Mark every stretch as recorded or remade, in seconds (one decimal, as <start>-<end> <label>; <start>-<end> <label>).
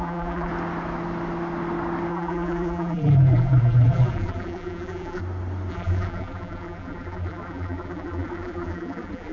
0.0-0.5 remade; 0.5-2.1 recorded; 2.1-5.2 remade; 5.2-5.7 recorded; 5.7-9.3 remade